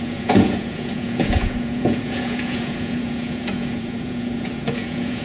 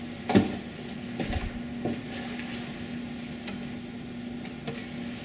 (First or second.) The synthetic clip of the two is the first